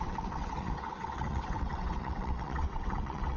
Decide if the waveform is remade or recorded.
remade